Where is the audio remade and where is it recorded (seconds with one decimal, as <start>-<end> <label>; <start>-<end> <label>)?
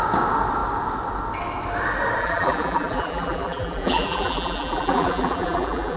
0.0-2.2 recorded; 2.2-6.0 remade